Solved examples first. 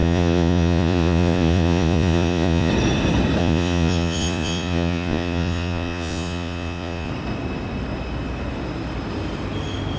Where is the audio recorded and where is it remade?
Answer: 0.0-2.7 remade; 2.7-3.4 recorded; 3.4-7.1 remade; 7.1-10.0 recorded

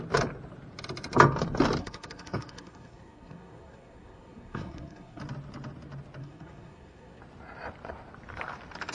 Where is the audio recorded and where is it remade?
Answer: 0.0-1.8 recorded; 1.8-5.2 remade; 5.2-6.2 recorded; 6.2-7.2 remade; 7.2-8.9 recorded

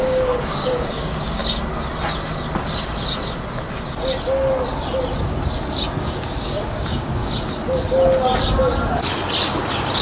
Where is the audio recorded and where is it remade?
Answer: 0.0-1.4 remade; 1.4-6.0 recorded; 6.0-7.2 remade; 7.2-10.0 recorded

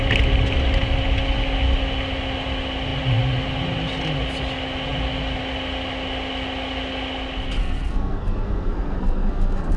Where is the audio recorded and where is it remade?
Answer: 0.0-7.6 recorded; 7.6-9.8 remade

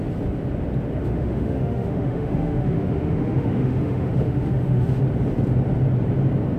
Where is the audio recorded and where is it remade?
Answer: 0.0-1.0 recorded; 1.0-5.0 remade; 5.0-6.6 recorded

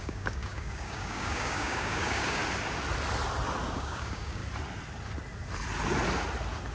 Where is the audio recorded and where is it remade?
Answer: 0.0-2.4 remade; 2.4-3.7 recorded; 3.7-4.4 remade; 4.4-6.7 recorded